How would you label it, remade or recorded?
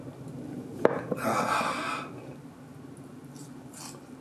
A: recorded